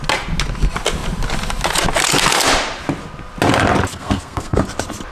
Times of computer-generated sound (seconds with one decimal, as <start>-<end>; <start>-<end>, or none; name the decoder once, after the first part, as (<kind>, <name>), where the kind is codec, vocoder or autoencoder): 3.9-4.6 (codec, SNAC)